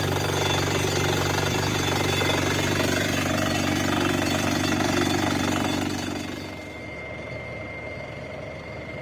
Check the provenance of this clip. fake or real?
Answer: real